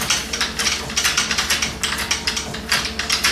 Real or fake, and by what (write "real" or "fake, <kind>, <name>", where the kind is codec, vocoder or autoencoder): real